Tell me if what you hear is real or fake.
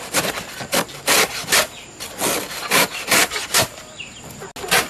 real